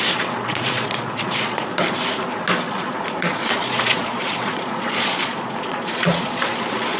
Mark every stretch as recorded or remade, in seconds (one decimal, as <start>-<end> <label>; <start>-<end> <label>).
0.0-1.7 remade; 1.7-2.7 recorded; 2.7-7.0 remade